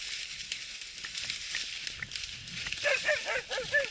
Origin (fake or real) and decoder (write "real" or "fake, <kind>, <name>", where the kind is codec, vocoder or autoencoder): real